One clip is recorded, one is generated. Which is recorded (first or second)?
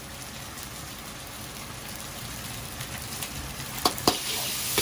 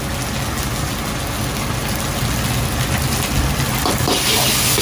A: second